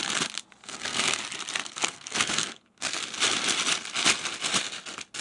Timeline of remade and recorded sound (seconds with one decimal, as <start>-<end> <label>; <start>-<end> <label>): 0.0-0.6 recorded; 0.6-1.2 remade; 1.2-1.6 recorded; 1.6-3.0 remade; 3.0-5.2 recorded

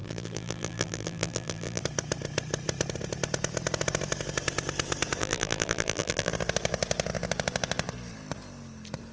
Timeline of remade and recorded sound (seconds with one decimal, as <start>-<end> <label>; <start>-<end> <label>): 0.0-1.8 remade; 1.8-5.2 recorded; 5.2-6.3 remade; 6.3-9.1 recorded

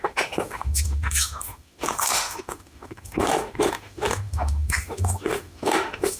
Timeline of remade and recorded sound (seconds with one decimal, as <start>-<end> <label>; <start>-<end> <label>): 0.0-6.2 remade

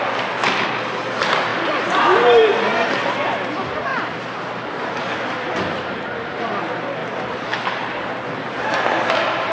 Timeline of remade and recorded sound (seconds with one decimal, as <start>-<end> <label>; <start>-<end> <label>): 0.0-1.5 recorded; 1.5-2.4 remade; 2.4-3.9 recorded; 3.9-6.6 remade; 6.6-9.5 recorded

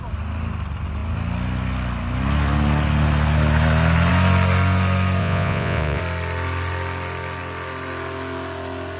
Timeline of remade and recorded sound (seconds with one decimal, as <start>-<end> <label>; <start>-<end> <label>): 0.0-5.2 recorded; 5.2-6.0 remade; 6.0-9.0 recorded

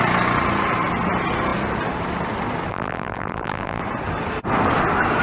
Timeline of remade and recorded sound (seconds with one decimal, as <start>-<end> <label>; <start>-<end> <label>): 0.0-2.7 recorded; 2.7-3.8 remade; 3.8-5.2 recorded

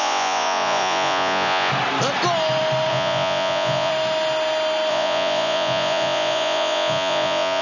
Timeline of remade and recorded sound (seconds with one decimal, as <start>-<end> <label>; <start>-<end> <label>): 0.0-1.7 remade; 1.7-2.9 recorded; 2.9-3.9 remade; 3.9-4.9 recorded; 4.9-7.6 remade

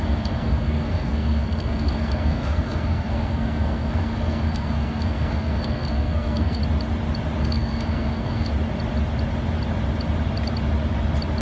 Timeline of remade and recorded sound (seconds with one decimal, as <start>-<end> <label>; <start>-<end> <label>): 0.0-6.6 remade; 6.6-7.4 recorded; 7.4-8.5 remade; 8.5-11.4 recorded